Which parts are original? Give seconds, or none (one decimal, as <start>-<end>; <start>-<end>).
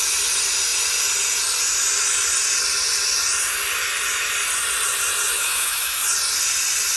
0.0-5.3; 6.0-7.0